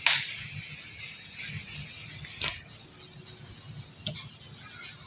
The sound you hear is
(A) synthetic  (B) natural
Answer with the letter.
B